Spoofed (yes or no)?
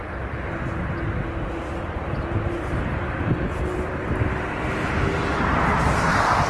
no